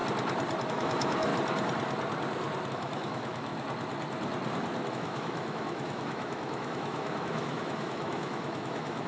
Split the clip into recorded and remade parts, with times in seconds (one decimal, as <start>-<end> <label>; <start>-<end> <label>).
0.0-0.7 recorded; 0.7-1.3 remade; 1.3-2.7 recorded; 2.7-3.5 remade; 3.5-4.9 recorded; 4.9-9.1 remade